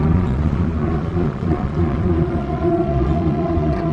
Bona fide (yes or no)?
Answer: no